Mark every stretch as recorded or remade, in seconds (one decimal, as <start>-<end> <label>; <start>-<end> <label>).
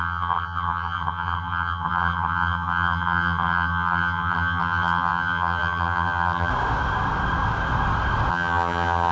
0.0-6.5 remade; 6.5-8.3 recorded; 8.3-9.1 remade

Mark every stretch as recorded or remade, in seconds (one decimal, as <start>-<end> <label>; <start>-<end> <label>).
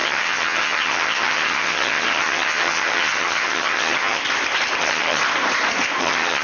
0.0-4.2 remade; 4.2-4.8 recorded; 4.8-5.2 remade; 5.2-6.0 recorded; 6.0-6.4 remade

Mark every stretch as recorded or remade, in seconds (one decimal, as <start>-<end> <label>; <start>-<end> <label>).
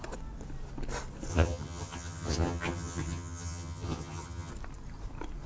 0.0-1.3 recorded; 1.3-4.5 remade; 4.5-5.5 recorded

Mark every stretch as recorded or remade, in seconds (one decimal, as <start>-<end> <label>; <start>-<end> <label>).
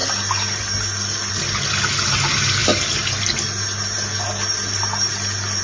0.0-5.6 recorded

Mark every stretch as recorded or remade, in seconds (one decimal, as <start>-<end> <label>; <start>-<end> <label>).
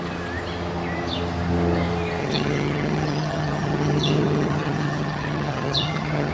0.0-2.2 recorded; 2.2-6.3 remade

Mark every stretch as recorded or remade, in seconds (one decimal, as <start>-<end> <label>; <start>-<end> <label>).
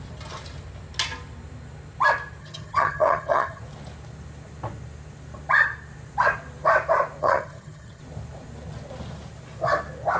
0.0-2.4 recorded; 2.4-3.6 remade; 3.6-7.2 recorded; 7.2-8.0 remade; 8.0-10.2 recorded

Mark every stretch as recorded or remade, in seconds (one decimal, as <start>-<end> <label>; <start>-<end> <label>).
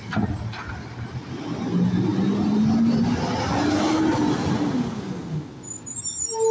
0.0-6.5 recorded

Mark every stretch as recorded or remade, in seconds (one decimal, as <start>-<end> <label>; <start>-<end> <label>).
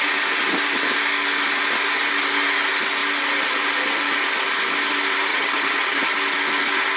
0.0-5.3 recorded; 5.3-6.0 remade; 6.0-7.0 recorded